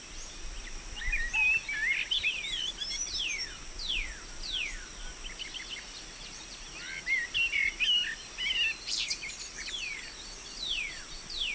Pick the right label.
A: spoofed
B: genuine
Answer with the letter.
B